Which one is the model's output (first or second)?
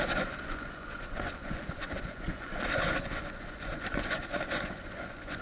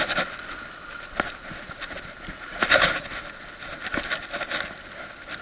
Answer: first